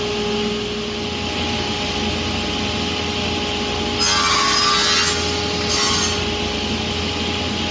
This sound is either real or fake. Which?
real